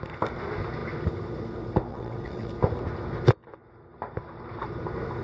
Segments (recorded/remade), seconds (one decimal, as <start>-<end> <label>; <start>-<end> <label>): 0.0-1.9 recorded; 1.9-2.5 remade; 2.5-5.2 recorded